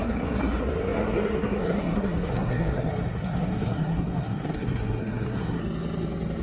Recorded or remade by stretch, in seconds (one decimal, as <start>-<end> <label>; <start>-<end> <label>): 0.0-5.6 remade; 5.6-6.4 recorded